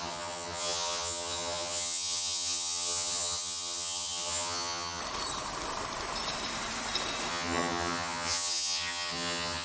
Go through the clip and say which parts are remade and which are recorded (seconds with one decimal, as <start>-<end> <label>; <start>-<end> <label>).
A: 0.0-5.0 remade; 5.0-7.3 recorded; 7.3-9.6 remade

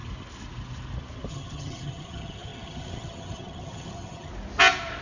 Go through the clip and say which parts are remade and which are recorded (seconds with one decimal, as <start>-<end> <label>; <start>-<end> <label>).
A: 0.0-1.3 recorded; 1.3-4.3 remade; 4.3-5.0 recorded

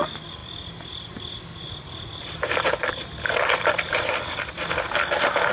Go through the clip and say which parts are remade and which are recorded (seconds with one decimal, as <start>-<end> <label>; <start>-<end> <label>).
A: 0.0-5.5 recorded

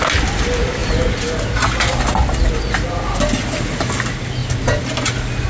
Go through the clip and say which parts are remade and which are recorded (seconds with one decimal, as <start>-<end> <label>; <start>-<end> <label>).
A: 0.0-5.5 recorded

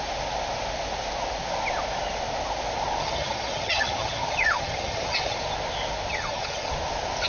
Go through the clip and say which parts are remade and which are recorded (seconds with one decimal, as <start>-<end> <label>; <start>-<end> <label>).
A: 0.0-3.0 recorded; 3.0-5.4 remade; 5.4-6.1 recorded; 6.1-6.7 remade; 6.7-7.3 recorded

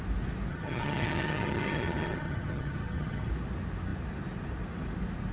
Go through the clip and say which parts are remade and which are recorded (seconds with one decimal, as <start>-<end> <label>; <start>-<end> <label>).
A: 0.0-0.5 recorded; 0.5-3.3 remade; 3.3-5.3 recorded